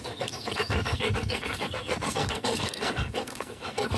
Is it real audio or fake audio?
fake